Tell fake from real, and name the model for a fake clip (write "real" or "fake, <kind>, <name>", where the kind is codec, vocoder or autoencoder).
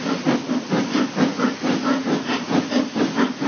real